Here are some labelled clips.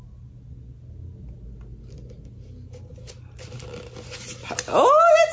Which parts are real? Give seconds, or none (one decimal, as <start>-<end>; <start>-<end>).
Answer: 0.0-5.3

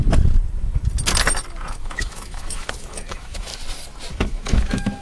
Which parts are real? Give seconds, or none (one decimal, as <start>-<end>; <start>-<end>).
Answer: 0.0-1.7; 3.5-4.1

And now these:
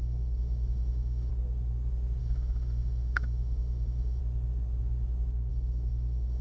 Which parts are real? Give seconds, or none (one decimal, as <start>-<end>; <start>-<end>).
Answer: 1.3-2.2; 4.2-5.5

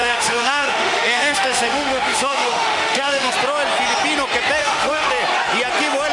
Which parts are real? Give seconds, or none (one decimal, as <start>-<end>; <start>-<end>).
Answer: 3.3-4.6; 5.1-6.1

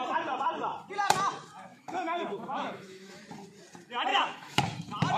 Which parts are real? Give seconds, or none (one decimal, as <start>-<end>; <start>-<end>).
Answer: 0.0-1.7; 3.2-4.1; 4.6-5.2

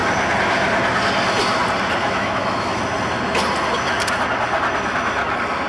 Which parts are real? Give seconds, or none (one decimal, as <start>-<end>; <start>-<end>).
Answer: 0.0-2.0; 2.8-5.7

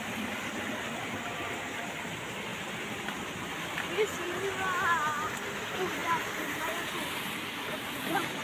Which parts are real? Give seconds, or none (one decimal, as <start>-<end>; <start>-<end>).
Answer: 0.0-8.4

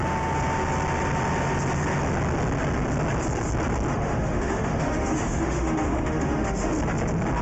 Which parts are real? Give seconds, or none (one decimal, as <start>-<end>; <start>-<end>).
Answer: 0.0-3.9; 6.7-7.4